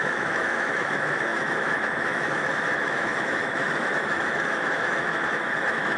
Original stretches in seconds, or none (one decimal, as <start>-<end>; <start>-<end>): none